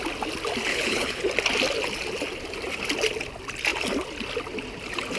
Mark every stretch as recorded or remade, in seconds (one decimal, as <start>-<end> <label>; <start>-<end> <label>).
0.0-0.7 recorded; 0.7-1.2 remade; 1.2-5.2 recorded

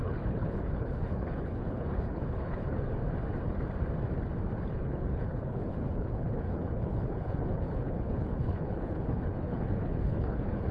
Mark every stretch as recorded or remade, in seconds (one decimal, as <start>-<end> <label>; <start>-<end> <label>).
0.0-2.9 remade; 2.9-4.7 recorded; 4.7-10.7 remade

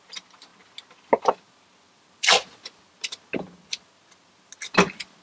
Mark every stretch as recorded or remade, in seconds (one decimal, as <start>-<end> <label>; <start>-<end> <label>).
0.0-5.2 recorded

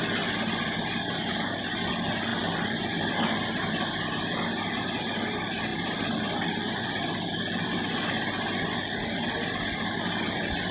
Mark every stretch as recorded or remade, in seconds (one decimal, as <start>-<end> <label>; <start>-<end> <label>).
0.0-10.7 recorded

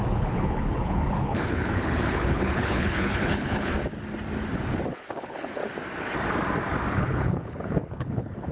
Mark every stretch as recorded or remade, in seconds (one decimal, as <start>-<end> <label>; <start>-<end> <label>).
0.0-3.7 remade; 3.7-4.9 recorded; 4.9-5.6 remade; 5.6-6.9 recorded; 6.9-8.5 remade

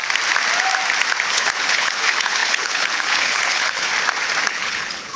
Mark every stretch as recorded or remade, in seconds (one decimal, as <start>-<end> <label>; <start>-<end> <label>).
0.0-1.3 recorded; 1.3-3.9 remade; 3.9-4.5 recorded; 4.5-5.2 remade

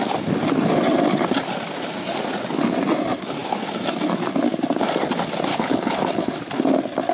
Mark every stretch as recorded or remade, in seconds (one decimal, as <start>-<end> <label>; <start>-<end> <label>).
0.0-5.5 recorded; 5.5-6.3 remade; 6.3-7.1 recorded